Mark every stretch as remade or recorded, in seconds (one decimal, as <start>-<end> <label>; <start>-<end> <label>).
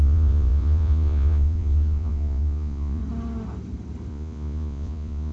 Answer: 0.0-3.0 remade; 3.0-4.1 recorded; 4.1-5.3 remade